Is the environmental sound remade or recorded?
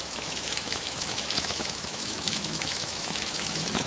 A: remade